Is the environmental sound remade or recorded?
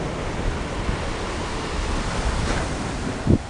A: recorded